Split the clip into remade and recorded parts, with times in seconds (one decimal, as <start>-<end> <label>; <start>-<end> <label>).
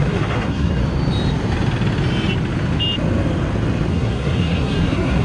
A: 0.0-0.8 remade; 0.8-3.9 recorded; 3.9-5.2 remade